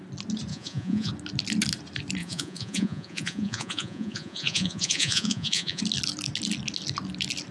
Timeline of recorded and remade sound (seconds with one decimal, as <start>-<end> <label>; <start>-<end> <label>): 0.0-0.5 recorded; 0.5-1.1 remade; 1.1-2.2 recorded; 2.2-5.8 remade; 5.8-7.5 recorded